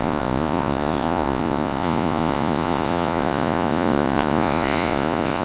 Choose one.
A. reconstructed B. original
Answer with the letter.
A